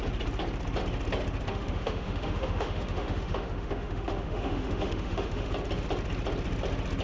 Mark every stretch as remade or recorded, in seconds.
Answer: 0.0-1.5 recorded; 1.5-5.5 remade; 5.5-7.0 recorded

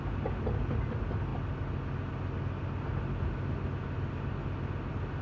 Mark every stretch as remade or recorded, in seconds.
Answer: 0.0-5.2 recorded

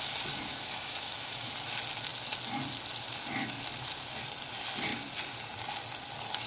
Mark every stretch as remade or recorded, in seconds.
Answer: 0.0-0.5 recorded; 0.5-1.5 remade; 1.5-6.5 recorded

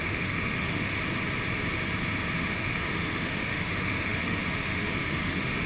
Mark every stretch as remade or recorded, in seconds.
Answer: 0.0-0.9 remade; 0.9-2.5 recorded; 2.5-5.7 remade

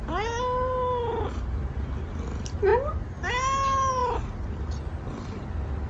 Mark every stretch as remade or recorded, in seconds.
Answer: 0.0-5.9 recorded